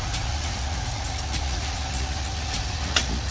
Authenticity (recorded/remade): remade